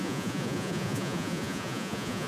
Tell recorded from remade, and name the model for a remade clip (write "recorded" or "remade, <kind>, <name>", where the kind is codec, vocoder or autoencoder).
remade, vocoder, Vocos